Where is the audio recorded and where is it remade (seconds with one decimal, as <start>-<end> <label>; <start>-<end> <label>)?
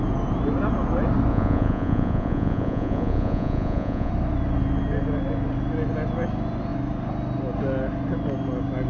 0.0-1.3 recorded; 1.3-4.1 remade; 4.1-8.9 recorded